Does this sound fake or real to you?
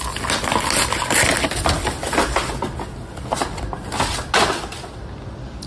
real